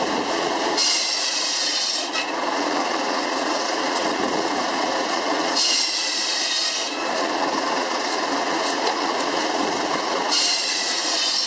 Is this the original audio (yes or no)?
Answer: no